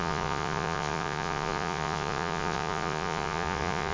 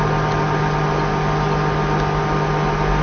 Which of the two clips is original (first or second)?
second